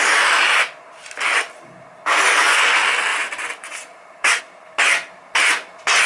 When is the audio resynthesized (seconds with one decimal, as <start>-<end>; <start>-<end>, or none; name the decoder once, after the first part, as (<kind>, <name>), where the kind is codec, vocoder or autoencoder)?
3.1-4.4 (vocoder, BigVGAN v2)